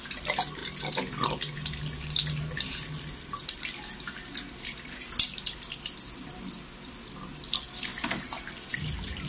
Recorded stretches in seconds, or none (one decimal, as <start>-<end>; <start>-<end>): 0.0-9.3